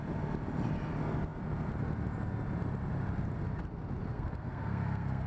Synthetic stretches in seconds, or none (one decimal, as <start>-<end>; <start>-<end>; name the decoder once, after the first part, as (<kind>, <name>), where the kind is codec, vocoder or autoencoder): 4.1-5.3 (codec, SNAC)

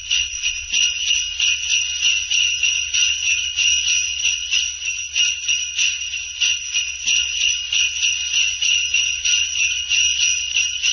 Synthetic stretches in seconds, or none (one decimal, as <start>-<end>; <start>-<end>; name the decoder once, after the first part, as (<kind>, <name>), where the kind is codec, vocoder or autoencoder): 0.0-0.7 (vocoder, Vocos); 4.1-4.7; 6.8-7.5

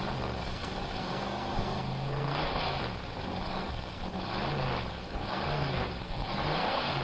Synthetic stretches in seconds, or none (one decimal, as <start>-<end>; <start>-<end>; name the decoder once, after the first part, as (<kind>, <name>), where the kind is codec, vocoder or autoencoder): 0.4-2.8 (codec, SNAC); 3.5-4.0; 4.9-7.0

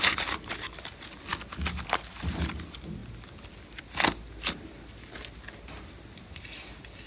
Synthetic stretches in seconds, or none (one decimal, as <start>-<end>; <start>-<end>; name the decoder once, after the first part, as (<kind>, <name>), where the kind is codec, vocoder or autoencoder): none

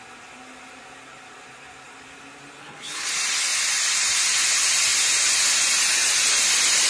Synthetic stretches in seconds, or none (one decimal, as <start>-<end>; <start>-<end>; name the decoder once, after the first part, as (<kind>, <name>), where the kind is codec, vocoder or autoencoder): 2.6-3.1 (codec, HILCodec)

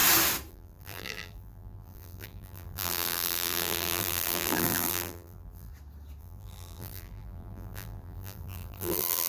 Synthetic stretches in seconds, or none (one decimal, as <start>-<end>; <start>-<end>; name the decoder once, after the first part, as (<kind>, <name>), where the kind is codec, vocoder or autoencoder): 0.5-5.7 (vocoder, BigVGAN v2); 6.2-9.3